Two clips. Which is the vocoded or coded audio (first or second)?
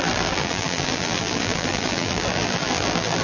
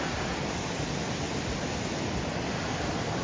first